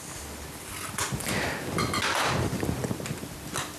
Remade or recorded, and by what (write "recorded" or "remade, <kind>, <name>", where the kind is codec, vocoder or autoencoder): recorded